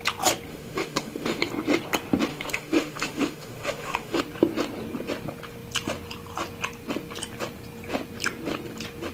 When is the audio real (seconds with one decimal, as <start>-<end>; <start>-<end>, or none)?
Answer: 0.0-0.5; 1.4-2.3; 4.2-9.1